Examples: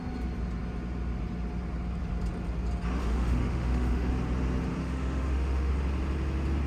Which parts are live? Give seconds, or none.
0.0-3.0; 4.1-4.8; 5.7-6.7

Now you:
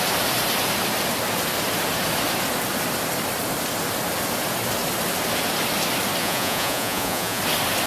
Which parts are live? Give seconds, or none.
0.0-6.2; 7.4-7.9

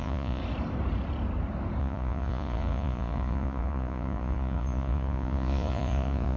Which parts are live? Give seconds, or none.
0.4-1.8

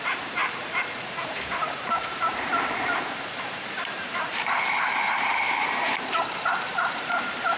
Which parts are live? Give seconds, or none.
none